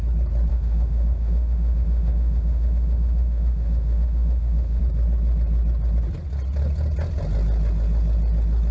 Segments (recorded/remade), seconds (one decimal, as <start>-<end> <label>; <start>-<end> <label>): 0.0-0.5 recorded; 0.5-4.8 remade; 4.8-8.7 recorded